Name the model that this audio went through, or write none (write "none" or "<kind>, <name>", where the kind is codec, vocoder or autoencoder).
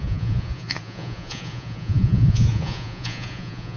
vocoder, Vocos